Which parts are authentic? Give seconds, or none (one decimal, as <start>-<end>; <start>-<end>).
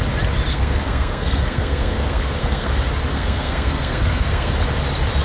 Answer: 0.0-0.5; 2.7-3.1; 4.5-5.2